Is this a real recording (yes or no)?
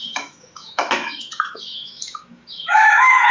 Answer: no